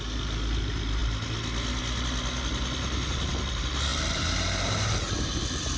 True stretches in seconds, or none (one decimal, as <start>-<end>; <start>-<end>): 0.0-5.8